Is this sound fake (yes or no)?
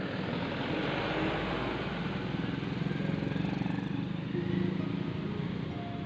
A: no